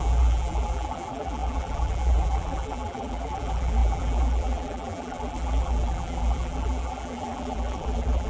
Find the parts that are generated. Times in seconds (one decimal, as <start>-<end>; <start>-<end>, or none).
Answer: 0.0-8.3